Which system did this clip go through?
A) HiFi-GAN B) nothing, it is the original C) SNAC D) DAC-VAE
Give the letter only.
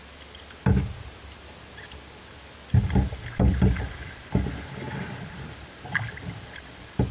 B